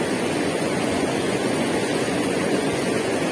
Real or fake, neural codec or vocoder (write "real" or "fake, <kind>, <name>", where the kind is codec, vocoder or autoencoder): fake, vocoder, Vocos